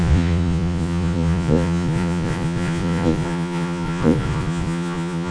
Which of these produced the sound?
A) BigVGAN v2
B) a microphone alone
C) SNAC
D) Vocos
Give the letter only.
D